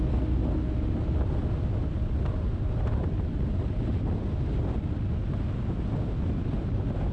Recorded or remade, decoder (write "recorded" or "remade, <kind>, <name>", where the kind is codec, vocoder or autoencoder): recorded